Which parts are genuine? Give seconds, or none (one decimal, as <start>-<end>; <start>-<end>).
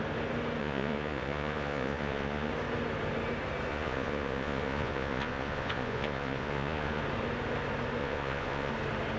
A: 0.0-0.6; 2.5-3.7; 7.0-8.0; 8.7-9.2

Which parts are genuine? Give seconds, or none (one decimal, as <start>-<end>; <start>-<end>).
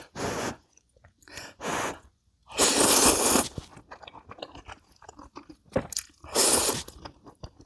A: 2.4-3.1; 3.7-7.7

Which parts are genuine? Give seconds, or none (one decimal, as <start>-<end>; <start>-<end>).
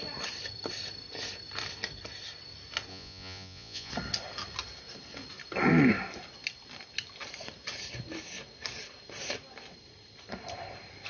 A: 0.0-2.9; 3.9-11.1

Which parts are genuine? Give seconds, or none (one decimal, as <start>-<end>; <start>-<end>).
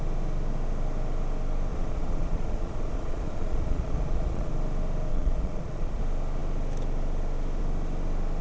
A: 0.0-1.7; 4.5-5.1; 6.0-8.4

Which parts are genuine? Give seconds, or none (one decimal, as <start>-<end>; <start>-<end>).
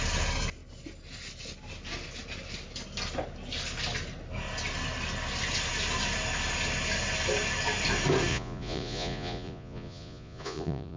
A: 0.0-8.3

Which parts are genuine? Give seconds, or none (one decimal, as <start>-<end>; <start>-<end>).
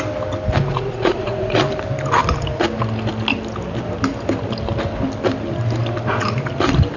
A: 0.0-0.7; 1.6-7.0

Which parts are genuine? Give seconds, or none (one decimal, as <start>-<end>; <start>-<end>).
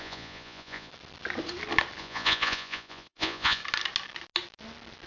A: 0.9-2.0; 3.6-5.1